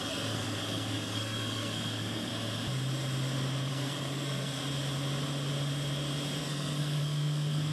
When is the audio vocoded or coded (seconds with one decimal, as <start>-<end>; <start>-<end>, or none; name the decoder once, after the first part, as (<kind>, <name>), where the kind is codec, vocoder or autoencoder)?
0.0-2.3 (codec, SNAC); 3.7-4.6; 6.4-7.7